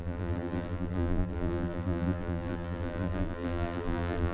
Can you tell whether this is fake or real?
fake